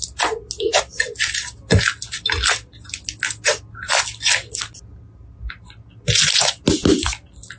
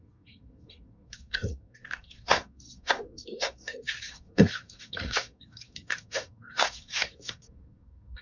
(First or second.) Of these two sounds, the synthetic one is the second